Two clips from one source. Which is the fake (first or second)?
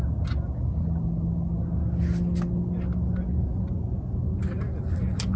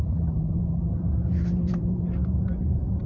second